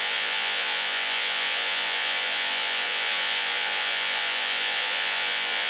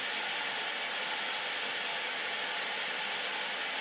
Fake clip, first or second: first